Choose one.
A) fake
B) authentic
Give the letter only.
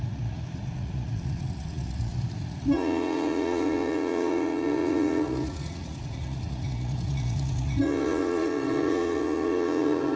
A